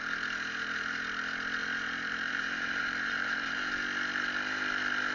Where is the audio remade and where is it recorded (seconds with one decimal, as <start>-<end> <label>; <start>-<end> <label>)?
0.0-1.6 recorded; 1.6-3.7 remade; 3.7-5.1 recorded